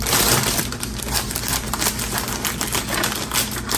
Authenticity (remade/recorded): recorded